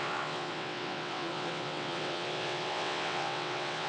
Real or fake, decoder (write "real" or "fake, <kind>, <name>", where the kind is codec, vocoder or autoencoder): fake, vocoder, WaveNeXt